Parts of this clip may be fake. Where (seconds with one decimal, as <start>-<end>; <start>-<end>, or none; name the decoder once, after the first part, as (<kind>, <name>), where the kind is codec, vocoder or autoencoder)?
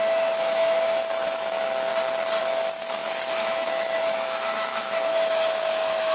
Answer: 0.0-1.9 (autoencoder, DAC-VAE); 2.4-6.1